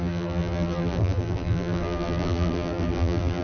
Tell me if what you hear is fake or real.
fake